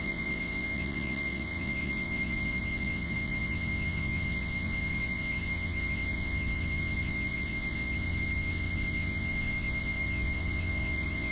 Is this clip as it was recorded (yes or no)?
no